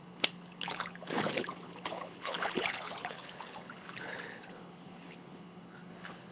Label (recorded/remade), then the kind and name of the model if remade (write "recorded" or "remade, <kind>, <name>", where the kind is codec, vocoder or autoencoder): remade, codec, HILCodec